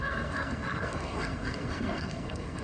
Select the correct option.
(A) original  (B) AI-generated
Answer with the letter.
B